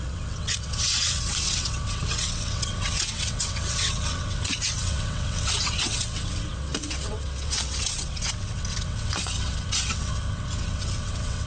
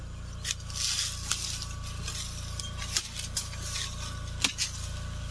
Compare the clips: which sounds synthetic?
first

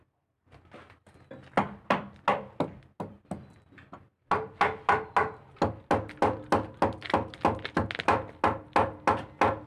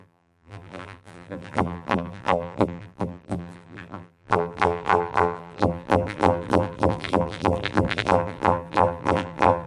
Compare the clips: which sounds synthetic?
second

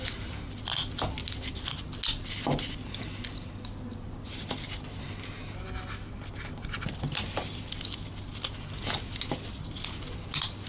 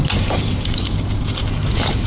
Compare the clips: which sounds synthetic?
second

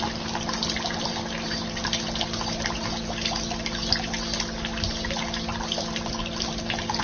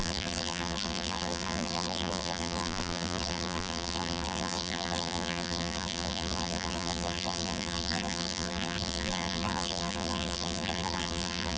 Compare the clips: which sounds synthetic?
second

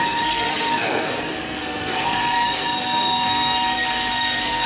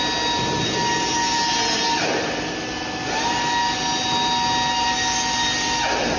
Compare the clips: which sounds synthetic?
first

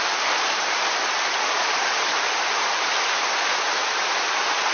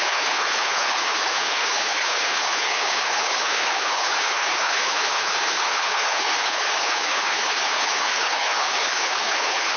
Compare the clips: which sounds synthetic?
second